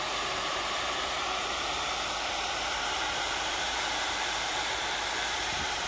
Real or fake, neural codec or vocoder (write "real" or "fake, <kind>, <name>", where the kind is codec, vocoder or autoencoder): fake, vocoder, BigVGAN v2